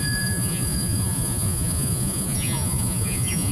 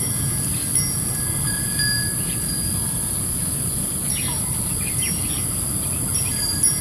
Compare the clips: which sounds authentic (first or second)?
second